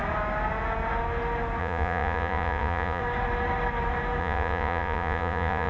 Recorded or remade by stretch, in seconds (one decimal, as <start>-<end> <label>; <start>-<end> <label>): 0.0-1.6 recorded; 1.6-3.0 remade; 3.0-4.2 recorded; 4.2-5.7 remade